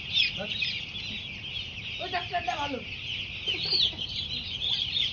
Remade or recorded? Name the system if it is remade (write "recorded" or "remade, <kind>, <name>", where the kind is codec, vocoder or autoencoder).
recorded